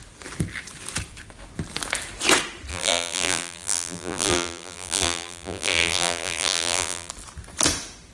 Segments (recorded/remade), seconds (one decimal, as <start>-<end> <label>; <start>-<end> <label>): 0.0-2.7 recorded; 2.7-7.1 remade; 7.1-8.1 recorded